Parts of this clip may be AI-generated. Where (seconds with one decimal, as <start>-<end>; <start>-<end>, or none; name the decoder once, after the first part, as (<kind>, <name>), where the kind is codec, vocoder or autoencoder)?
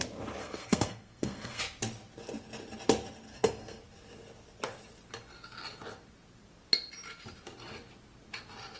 0.4-1.6 (codec, SNAC); 3.3-3.8